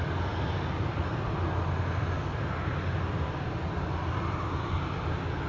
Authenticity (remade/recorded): recorded